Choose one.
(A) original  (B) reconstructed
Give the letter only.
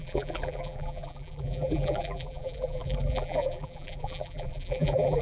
B